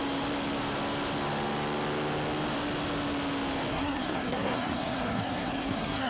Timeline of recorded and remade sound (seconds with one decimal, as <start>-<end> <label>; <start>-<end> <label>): 0.0-3.7 recorded; 3.7-6.1 remade